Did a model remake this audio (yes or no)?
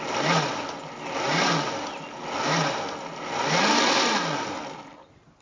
no